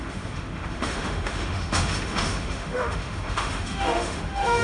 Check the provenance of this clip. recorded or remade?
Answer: remade